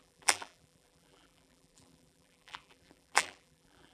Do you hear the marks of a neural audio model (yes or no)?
yes